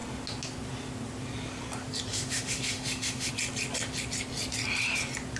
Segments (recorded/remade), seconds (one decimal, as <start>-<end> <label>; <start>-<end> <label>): 0.0-2.1 recorded; 2.1-3.3 remade; 3.3-5.4 recorded